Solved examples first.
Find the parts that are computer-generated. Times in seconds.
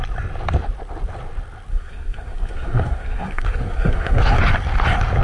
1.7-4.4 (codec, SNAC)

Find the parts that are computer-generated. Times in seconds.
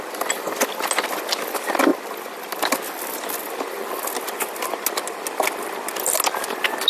none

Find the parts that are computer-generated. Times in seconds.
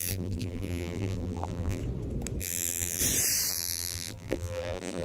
0.0-1.8 (vocoder, BigVGAN v2); 2.4-3.0; 3.5-5.0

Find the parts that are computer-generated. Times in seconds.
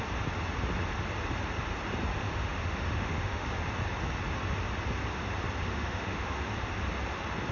2.1-3.5 (autoencoder, DAC-VAE); 5.6-6.4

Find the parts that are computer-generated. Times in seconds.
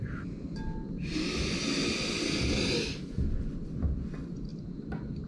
none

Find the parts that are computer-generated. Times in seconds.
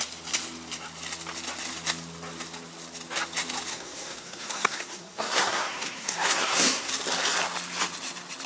3.7-6.9 (codec, SNAC)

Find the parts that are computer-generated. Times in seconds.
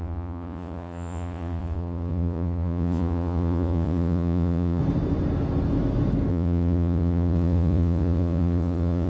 0.0-4.8 (vocoder, Vocos); 6.3-9.1